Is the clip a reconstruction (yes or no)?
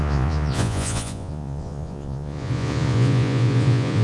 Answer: yes